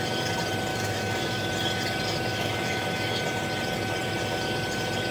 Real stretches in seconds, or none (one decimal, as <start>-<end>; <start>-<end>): 0.0-0.7; 1.5-2.3; 3.2-5.1

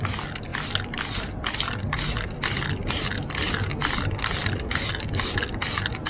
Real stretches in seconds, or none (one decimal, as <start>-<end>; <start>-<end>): 0.0-6.1

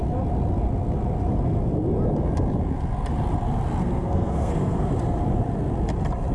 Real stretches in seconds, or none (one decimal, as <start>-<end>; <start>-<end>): 0.0-3.8; 4.8-6.3

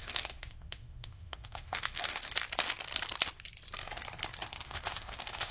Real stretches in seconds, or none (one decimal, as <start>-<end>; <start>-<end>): 2.3-4.5

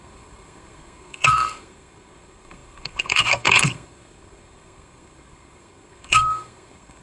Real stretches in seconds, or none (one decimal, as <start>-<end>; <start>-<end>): none

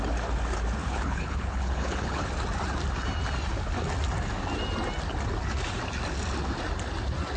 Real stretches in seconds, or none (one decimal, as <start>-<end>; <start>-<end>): 0.0-0.8; 2.3-7.4

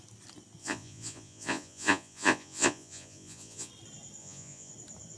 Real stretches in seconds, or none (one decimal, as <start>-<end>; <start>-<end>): 0.0-0.6; 3.7-4.2; 4.7-5.2

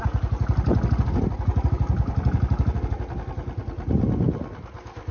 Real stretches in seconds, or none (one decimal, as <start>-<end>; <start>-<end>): 0.0-1.5; 3.6-5.1